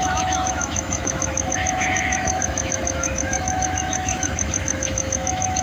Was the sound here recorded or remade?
remade